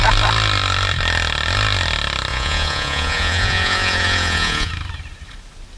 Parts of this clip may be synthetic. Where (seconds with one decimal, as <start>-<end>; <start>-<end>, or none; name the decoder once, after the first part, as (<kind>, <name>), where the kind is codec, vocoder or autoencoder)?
2.3-4.7 (vocoder, Vocos)